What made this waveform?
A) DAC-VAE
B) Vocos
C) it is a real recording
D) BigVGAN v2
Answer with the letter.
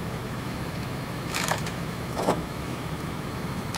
A